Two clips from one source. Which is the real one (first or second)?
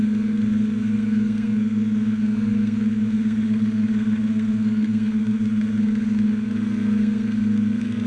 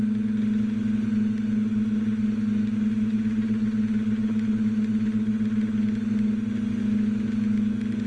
second